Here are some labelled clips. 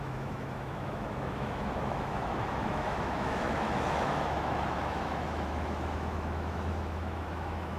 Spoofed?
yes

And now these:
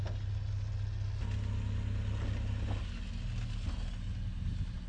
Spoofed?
no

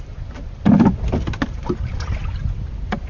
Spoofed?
no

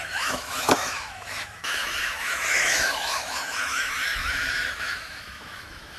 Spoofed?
yes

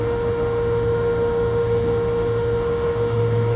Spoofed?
yes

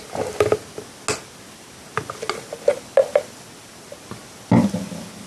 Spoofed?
no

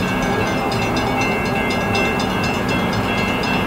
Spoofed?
no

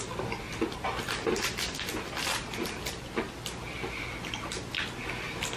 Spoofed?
no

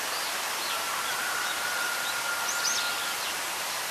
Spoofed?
no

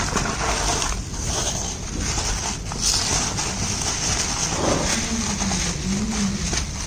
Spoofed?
no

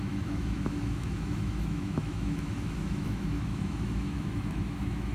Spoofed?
yes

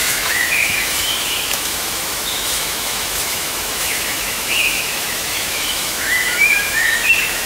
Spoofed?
yes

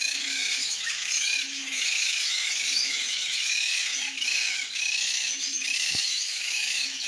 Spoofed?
yes